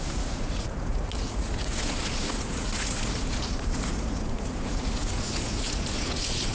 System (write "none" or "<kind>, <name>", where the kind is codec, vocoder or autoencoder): vocoder, Vocos